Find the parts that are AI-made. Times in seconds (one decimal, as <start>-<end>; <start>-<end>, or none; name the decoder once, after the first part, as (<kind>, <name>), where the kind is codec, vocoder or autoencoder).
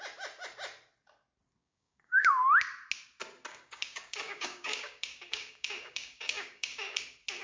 1.6-2.3 (codec, DAC); 3.5-7.0